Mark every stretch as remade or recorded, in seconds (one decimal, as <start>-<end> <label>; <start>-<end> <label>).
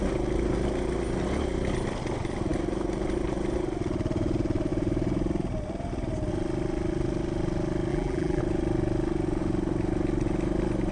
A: 0.0-7.9 recorded; 7.9-8.4 remade; 8.4-10.9 recorded